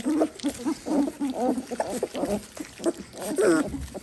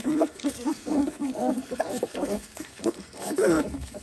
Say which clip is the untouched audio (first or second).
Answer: first